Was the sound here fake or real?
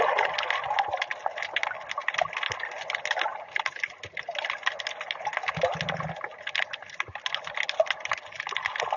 real